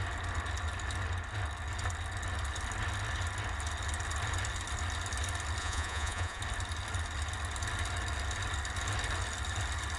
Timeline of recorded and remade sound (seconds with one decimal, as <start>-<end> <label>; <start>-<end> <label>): 0.0-5.6 recorded; 5.6-6.4 remade; 6.4-10.0 recorded